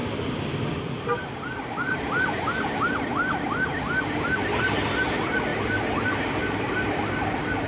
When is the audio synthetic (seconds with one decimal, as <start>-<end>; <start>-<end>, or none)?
none